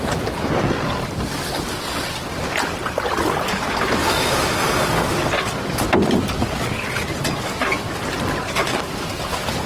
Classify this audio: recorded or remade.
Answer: recorded